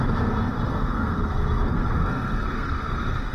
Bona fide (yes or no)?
no